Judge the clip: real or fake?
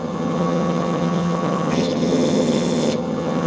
fake